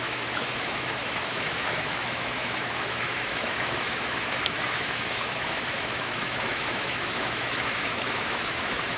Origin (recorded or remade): remade